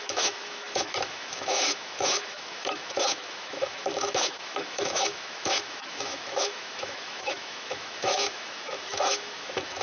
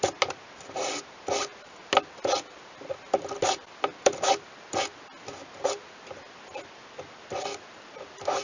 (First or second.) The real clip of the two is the second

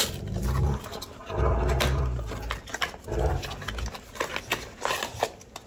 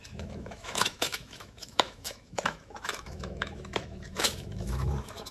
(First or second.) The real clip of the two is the first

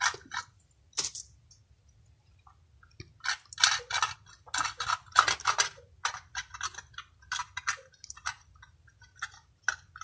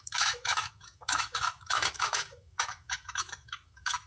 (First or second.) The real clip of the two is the first